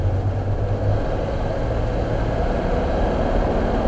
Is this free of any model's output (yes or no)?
yes